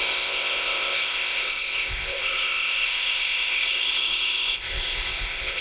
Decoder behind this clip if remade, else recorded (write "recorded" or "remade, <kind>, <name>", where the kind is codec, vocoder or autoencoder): remade, codec, ZipCodec